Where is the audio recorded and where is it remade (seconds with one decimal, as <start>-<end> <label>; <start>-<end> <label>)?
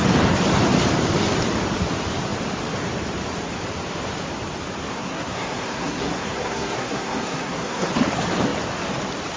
0.0-4.9 recorded; 4.9-7.9 remade; 7.9-9.4 recorded